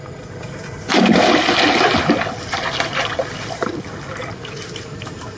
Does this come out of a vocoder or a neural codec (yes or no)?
no